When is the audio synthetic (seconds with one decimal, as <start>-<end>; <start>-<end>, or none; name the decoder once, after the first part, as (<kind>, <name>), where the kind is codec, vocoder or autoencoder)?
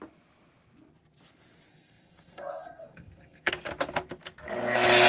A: 1.7-3.5 (codec, SNAC)